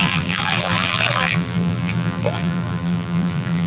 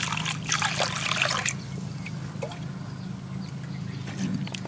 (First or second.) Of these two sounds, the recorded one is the second